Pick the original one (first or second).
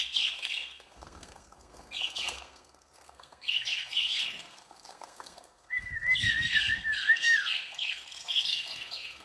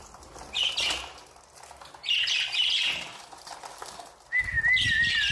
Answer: second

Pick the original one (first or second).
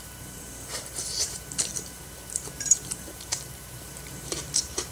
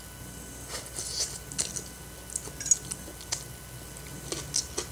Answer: second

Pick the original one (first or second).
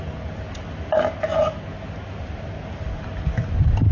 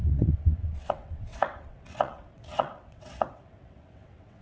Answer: first